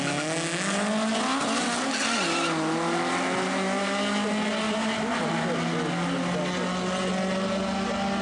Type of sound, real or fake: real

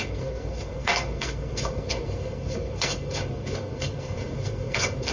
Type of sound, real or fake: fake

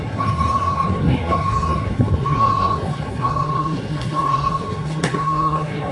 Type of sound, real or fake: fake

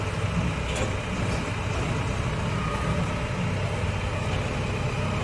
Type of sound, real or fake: real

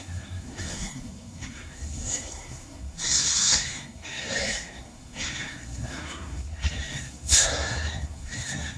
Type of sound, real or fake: fake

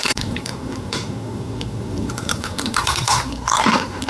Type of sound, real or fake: fake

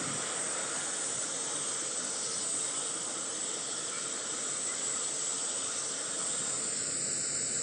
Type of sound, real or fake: real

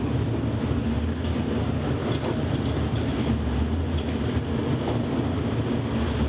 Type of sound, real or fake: real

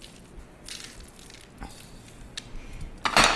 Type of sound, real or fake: real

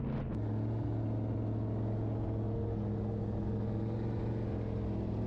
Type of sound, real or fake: real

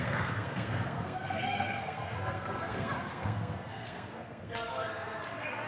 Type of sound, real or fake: fake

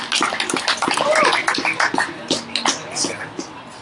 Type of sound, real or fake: real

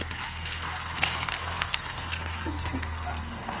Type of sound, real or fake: fake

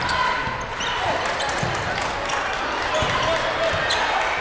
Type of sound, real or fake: real